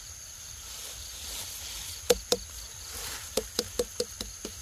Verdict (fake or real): real